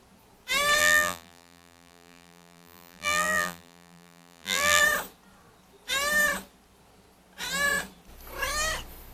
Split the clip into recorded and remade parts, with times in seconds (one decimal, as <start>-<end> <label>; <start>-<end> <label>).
0.0-0.8 recorded; 0.8-4.8 remade; 4.8-9.1 recorded